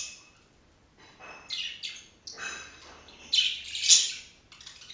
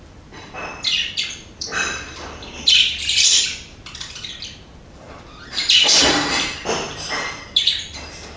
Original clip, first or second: first